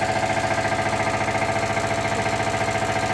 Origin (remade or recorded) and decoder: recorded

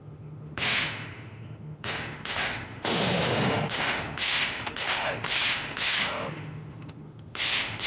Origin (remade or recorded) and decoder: remade, autoencoder, DAC-VAE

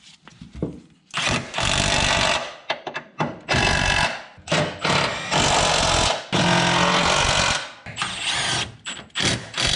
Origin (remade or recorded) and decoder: recorded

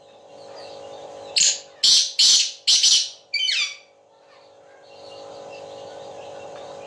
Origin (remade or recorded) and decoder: recorded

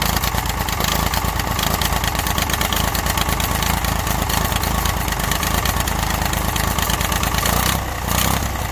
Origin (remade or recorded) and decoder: recorded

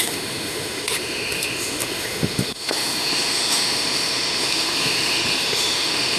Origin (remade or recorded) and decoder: remade, autoencoder, DAC-VAE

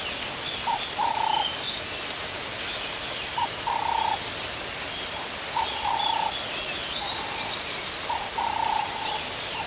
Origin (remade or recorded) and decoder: recorded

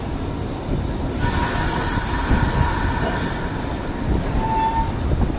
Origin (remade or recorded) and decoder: recorded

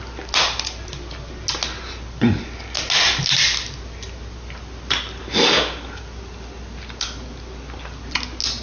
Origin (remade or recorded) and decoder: recorded